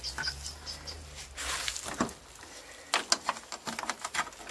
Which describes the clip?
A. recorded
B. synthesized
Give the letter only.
A